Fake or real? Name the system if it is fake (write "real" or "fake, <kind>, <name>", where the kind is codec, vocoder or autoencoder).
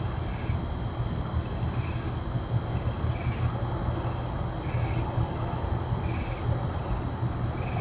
real